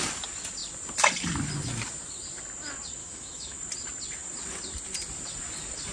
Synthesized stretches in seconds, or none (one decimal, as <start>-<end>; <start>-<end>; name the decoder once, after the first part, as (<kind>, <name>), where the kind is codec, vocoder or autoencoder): 3.0-3.6 (autoencoder, DAC-VAE)